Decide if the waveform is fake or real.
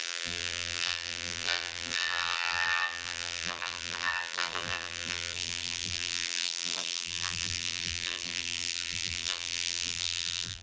fake